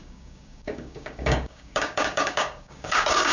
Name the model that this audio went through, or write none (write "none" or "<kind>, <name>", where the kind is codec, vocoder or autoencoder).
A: codec, DAC